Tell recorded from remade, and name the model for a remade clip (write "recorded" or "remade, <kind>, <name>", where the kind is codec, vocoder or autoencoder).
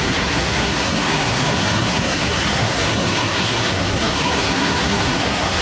remade, codec, SNAC